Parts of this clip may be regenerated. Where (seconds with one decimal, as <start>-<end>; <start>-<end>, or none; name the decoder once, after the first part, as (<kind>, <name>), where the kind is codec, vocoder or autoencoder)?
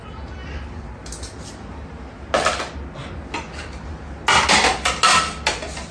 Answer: none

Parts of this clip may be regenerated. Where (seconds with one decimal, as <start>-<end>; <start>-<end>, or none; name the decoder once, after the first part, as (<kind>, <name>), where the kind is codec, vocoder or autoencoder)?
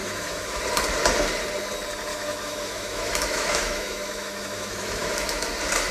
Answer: 0.0-0.6 (autoencoder, DAC-VAE); 2.1-5.5